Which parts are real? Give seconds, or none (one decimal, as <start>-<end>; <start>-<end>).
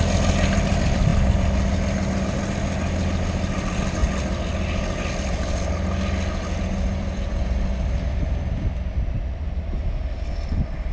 0.0-10.9